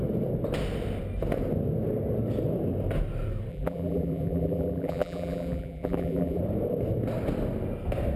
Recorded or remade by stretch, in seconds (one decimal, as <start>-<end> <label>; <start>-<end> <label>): 0.0-3.5 recorded; 3.5-6.4 remade; 6.4-8.2 recorded